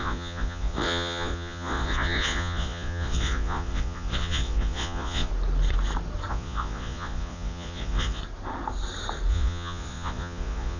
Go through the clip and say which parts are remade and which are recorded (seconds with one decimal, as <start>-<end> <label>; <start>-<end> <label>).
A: 0.0-5.3 remade; 5.3-6.3 recorded; 6.3-8.2 remade; 8.2-9.3 recorded; 9.3-10.8 remade